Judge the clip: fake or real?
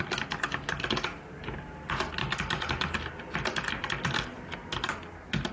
real